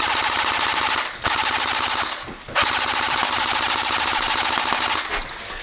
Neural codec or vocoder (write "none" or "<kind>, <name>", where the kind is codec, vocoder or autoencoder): none